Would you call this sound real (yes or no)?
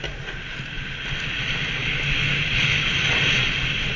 yes